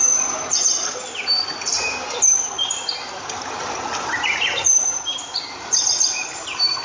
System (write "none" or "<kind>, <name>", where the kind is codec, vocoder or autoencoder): none